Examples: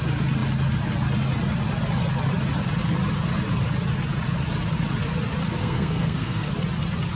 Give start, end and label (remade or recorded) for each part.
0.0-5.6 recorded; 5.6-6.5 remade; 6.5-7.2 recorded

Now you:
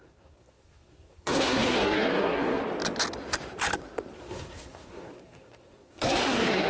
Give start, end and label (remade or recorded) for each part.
0.0-2.6 remade; 2.6-4.2 recorded; 4.2-6.7 remade

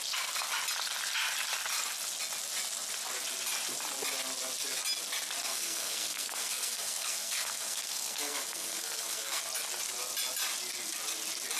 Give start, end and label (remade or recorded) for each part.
0.0-5.4 recorded; 5.4-9.4 remade; 9.4-11.6 recorded

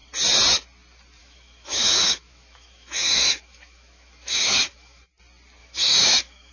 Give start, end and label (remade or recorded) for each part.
0.0-1.2 recorded; 1.2-5.1 remade; 5.1-5.6 recorded; 5.6-6.5 remade

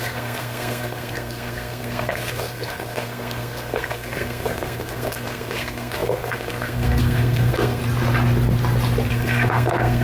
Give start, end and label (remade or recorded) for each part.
0.0-7.8 remade; 7.8-9.1 recorded; 9.1-10.0 remade